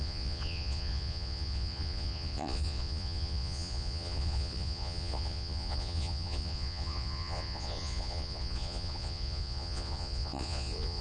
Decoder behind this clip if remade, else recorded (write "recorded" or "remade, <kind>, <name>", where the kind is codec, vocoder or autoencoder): remade, vocoder, Vocos